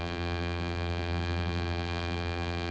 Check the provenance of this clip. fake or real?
fake